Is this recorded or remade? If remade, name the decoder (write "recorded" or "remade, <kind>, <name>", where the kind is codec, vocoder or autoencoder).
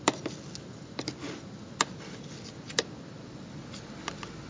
recorded